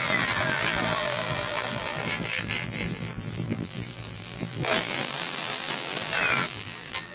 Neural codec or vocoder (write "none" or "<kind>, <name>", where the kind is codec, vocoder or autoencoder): vocoder, BigVGAN v2